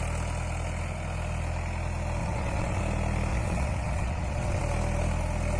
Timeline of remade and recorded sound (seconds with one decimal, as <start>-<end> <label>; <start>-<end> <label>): 0.0-2.2 recorded; 2.2-2.8 remade; 2.8-3.3 recorded; 3.3-4.6 remade; 4.6-5.6 recorded